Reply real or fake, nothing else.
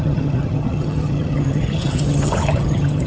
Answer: fake